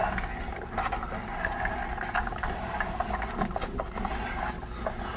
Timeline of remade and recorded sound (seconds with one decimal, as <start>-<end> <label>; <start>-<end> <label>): 0.0-2.2 recorded; 2.2-3.0 remade; 3.0-5.2 recorded